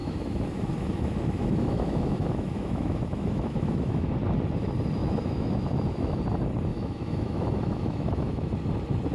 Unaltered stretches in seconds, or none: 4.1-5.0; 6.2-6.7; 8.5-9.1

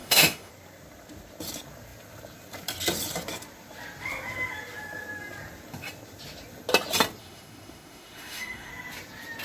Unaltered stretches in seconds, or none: 0.5-7.2; 8.7-9.4

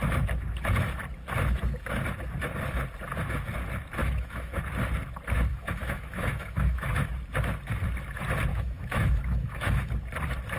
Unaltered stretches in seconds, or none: 0.0-4.0; 4.6-5.5; 7.1-8.5; 9.9-10.6

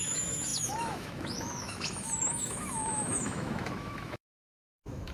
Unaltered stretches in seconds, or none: none

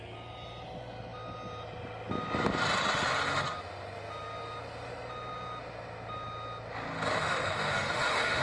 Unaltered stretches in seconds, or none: 0.0-7.1